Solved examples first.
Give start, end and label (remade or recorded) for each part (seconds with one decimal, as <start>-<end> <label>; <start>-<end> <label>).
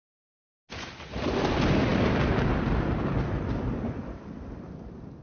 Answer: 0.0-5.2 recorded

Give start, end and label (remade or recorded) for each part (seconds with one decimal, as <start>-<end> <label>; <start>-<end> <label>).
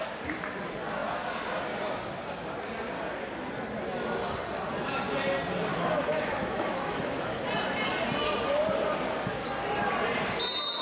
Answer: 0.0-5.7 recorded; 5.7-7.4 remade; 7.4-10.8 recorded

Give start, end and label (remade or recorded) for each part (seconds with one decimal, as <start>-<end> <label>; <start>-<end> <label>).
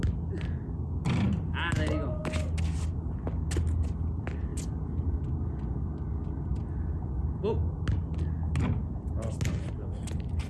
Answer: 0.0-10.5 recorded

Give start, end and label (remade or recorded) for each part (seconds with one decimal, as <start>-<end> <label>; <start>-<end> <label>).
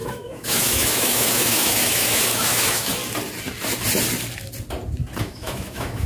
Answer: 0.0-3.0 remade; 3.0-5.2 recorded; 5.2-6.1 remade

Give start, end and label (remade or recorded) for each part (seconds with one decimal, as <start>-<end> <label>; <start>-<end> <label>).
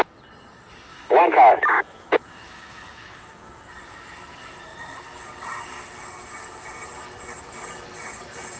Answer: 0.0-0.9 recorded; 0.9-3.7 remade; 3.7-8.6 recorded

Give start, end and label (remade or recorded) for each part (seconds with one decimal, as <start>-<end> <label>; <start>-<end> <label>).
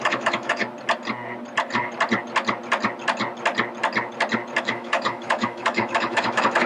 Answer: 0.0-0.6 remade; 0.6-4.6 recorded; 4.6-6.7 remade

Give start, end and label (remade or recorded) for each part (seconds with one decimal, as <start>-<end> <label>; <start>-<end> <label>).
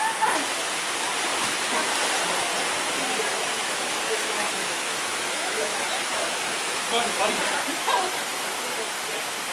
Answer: 0.0-3.3 recorded; 3.3-7.2 remade; 7.2-9.5 recorded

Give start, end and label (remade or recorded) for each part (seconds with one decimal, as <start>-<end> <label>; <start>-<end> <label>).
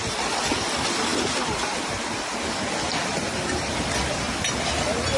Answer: 0.0-5.2 recorded